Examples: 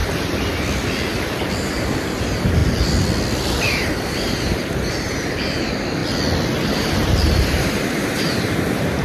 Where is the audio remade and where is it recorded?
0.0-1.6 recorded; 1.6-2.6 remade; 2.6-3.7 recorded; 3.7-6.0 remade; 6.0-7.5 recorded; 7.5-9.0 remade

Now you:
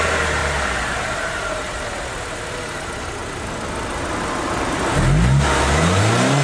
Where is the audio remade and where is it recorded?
0.0-0.4 recorded; 0.4-1.9 remade; 1.9-6.4 recorded